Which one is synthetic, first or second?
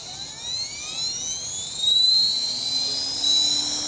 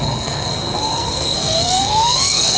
second